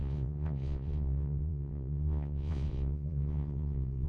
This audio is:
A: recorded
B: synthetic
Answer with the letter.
B